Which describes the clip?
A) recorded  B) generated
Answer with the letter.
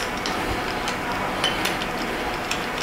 A